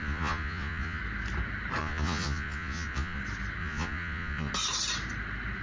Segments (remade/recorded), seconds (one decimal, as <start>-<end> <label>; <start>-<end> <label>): 0.0-1.0 remade; 1.0-1.8 recorded; 1.8-3.2 remade; 3.2-3.6 recorded; 3.6-4.5 remade; 4.5-5.6 recorded